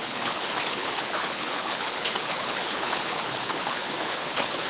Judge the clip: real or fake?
fake